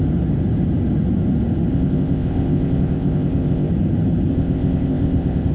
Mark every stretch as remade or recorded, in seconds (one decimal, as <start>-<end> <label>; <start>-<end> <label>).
0.0-1.7 recorded; 1.7-3.7 remade; 3.7-4.3 recorded; 4.3-5.5 remade